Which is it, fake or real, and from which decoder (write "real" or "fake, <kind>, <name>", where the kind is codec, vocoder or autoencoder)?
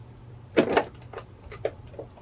real